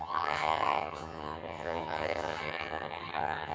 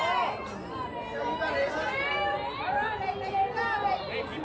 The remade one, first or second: first